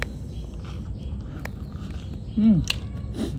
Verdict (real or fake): real